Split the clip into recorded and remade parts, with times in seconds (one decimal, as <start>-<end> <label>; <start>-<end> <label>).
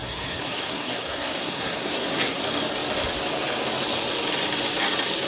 0.0-2.4 remade; 2.4-5.3 recorded